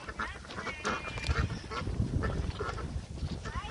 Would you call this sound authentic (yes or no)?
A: yes